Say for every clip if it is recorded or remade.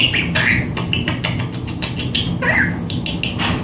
recorded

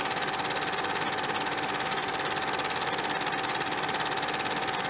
recorded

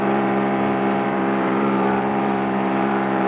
remade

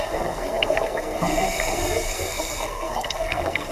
remade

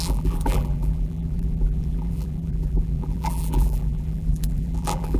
remade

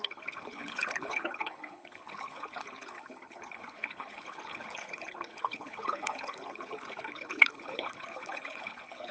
remade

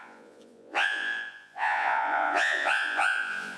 remade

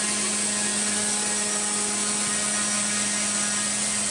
recorded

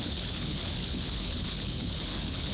remade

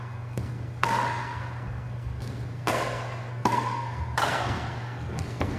remade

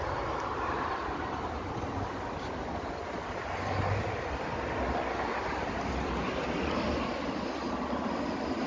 recorded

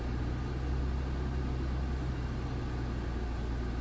recorded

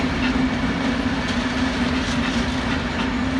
recorded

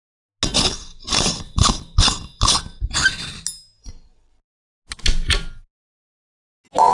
recorded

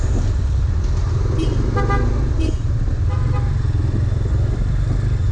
recorded